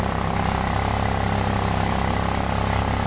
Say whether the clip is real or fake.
real